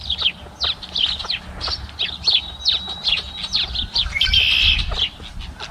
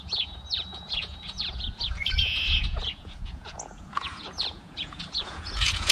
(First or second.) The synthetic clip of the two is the second